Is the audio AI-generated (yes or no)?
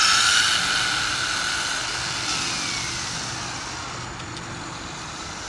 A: no